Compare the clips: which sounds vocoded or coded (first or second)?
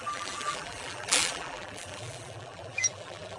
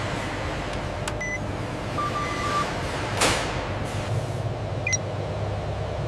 first